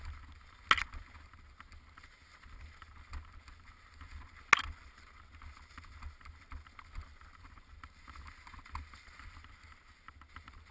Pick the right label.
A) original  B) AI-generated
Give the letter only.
A